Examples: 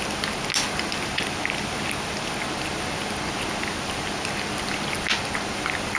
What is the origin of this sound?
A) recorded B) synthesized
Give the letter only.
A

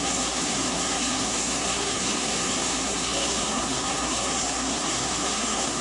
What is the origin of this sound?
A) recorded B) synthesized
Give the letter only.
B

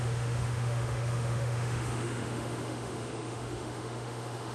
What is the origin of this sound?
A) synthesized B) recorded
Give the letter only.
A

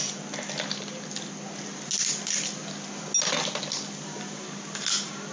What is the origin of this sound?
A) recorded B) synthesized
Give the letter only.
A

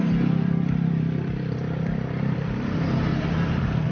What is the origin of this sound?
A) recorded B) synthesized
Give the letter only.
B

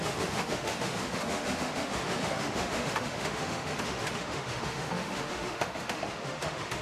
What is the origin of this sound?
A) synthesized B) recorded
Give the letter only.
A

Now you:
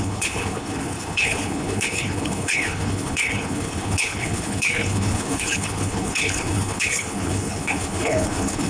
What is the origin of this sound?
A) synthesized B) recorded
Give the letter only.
A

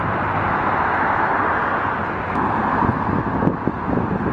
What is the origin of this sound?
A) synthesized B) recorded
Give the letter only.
B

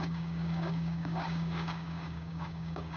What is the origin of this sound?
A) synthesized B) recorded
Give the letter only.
A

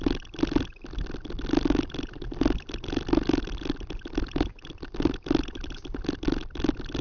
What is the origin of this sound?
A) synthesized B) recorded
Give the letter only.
B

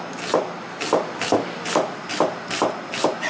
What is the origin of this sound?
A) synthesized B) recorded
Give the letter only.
B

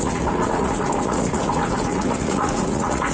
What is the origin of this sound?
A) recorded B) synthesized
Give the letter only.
B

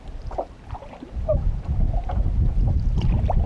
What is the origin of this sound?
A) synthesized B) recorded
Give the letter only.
B